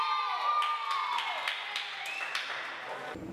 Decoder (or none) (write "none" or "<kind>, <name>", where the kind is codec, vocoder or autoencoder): none